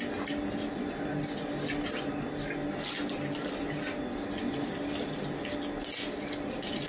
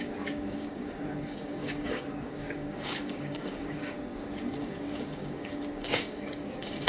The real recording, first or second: first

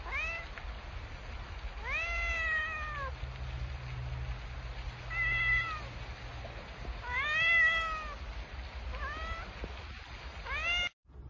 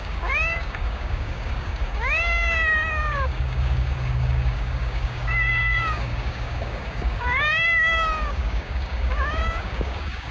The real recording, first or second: first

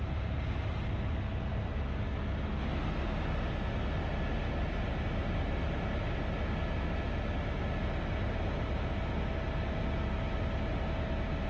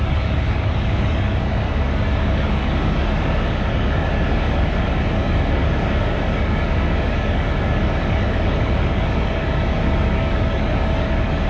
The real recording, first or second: first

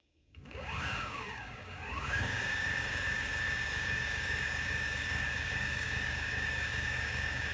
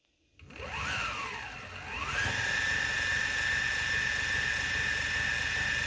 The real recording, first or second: second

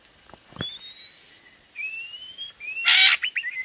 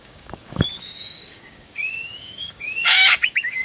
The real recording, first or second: first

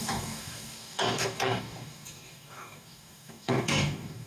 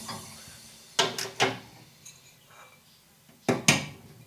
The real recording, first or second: second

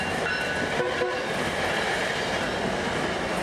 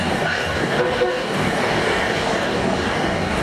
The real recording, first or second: first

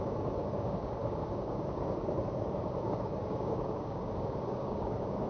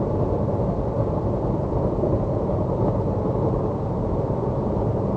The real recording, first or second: second